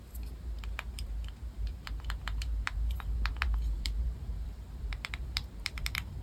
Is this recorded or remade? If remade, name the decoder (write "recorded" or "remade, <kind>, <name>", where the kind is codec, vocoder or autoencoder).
remade, vocoder, BigVGAN v2